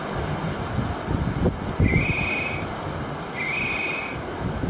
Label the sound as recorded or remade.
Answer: recorded